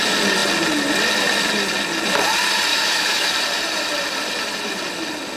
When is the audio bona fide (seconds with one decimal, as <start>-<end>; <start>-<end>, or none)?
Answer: 0.0-2.7; 3.3-5.4